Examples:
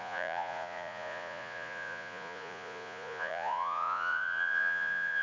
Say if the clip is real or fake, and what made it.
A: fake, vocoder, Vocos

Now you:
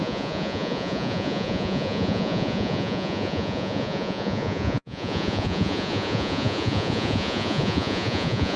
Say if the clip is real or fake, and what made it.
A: fake, vocoder, Vocos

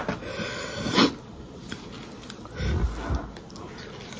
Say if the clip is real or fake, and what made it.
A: real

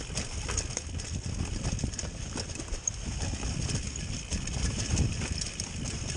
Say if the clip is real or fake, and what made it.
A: real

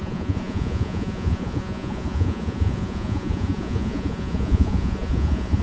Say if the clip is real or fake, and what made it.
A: fake, vocoder, Vocos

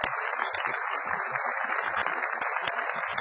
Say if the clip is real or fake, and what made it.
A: real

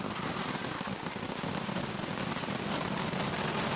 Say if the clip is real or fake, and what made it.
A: real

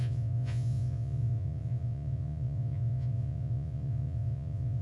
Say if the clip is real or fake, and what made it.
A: fake, vocoder, Vocos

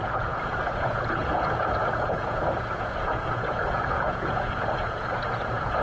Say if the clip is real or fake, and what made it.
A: fake, vocoder, Vocos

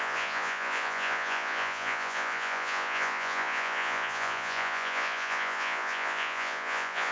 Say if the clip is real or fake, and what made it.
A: fake, vocoder, Vocos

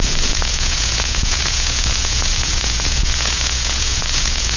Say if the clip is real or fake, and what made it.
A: fake, vocoder, Vocos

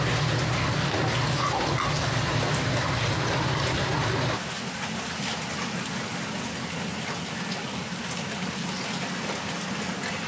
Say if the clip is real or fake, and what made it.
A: real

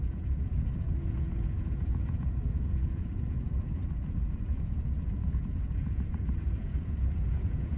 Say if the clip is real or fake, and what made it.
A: fake, vocoder, Vocos